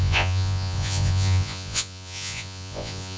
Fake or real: fake